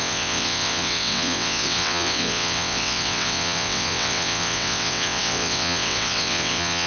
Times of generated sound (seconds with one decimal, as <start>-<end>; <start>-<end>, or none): 0.0-6.9